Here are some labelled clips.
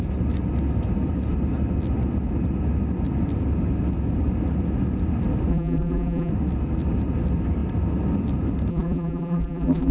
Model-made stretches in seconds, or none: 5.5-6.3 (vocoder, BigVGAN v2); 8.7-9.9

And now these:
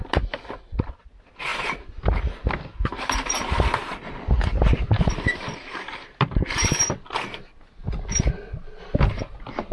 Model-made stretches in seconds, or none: none